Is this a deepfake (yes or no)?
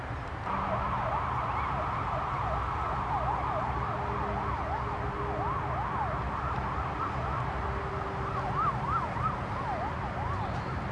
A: no